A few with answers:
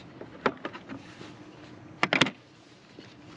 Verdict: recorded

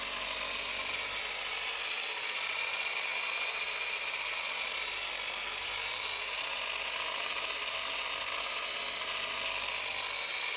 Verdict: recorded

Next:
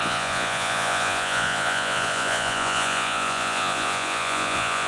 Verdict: remade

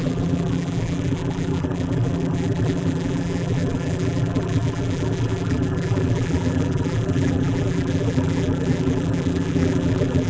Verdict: remade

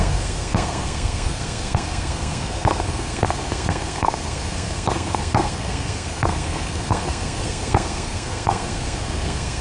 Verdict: remade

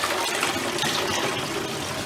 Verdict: recorded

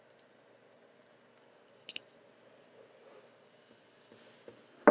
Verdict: recorded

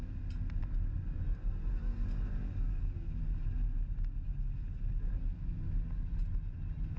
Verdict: recorded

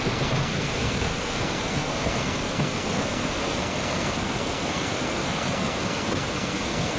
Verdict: remade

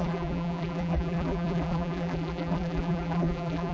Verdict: remade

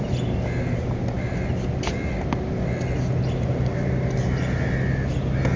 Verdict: recorded